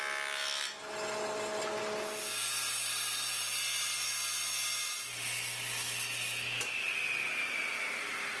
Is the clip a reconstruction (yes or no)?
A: no